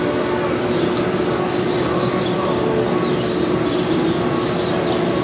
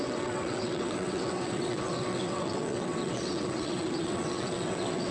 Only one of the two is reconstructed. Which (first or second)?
second